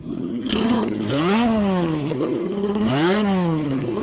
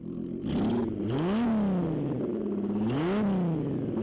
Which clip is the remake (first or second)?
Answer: first